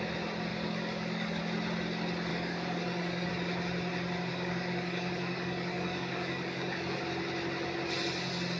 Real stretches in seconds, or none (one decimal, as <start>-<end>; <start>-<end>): 0.0-0.5; 1.4-2.3; 3.3-4.3; 7.0-8.6

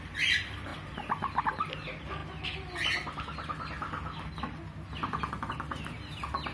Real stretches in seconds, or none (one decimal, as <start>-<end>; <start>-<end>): 0.0-6.5

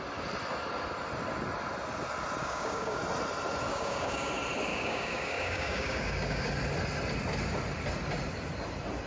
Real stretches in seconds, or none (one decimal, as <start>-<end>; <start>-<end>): 0.0-2.4; 3.0-3.7; 4.3-4.7; 6.5-9.1

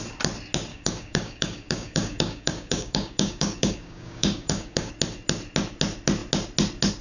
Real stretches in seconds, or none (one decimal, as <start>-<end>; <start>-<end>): 0.0-0.7; 4.9-7.0

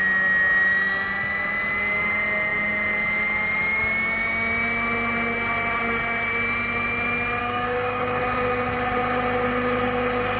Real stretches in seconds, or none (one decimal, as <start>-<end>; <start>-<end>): 0.0-7.4; 8.2-10.4